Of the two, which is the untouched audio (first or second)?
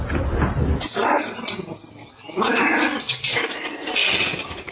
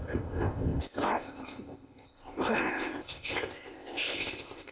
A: first